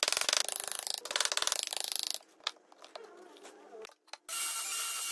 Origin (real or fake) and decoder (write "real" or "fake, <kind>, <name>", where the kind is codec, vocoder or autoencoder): real